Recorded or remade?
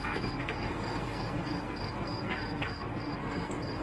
remade